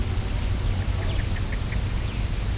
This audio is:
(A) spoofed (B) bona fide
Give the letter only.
B